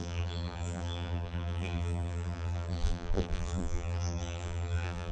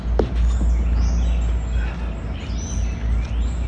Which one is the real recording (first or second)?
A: second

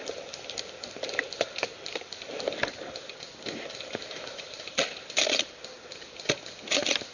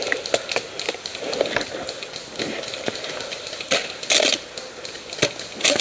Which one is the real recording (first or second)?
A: second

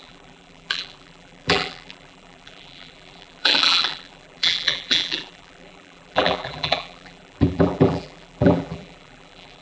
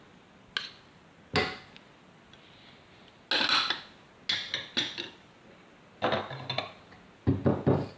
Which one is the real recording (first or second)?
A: second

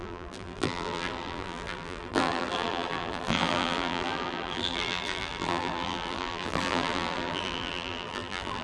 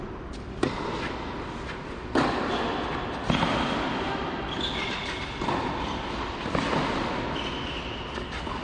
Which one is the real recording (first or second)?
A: second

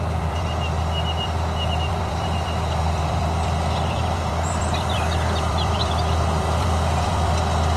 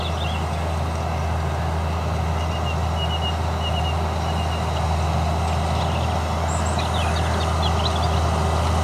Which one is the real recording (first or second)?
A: second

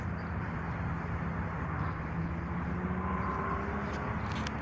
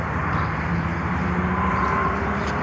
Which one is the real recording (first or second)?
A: first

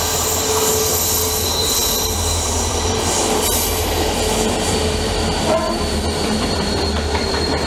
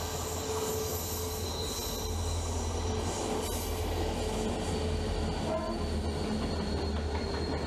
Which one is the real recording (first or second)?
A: second